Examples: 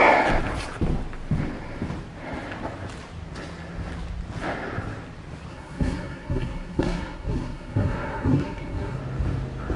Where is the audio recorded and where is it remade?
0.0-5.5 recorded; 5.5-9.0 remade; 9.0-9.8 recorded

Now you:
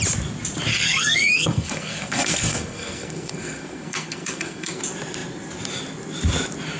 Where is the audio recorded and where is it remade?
0.0-0.7 recorded; 0.7-4.8 remade; 4.8-6.8 recorded

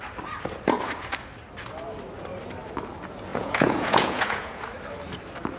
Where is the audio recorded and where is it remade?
0.0-3.3 recorded; 3.3-4.6 remade; 4.6-5.6 recorded

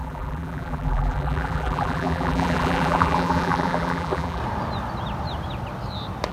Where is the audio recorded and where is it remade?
0.0-4.4 remade; 4.4-6.3 recorded

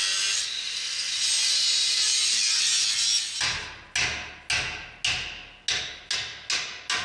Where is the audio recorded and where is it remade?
0.0-7.0 recorded